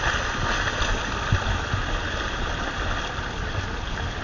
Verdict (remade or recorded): recorded